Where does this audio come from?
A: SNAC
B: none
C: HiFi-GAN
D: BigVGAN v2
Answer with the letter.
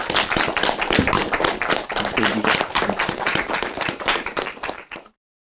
D